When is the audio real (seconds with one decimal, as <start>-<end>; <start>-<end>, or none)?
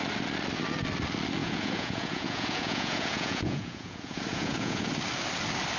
0.0-1.4; 4.9-5.8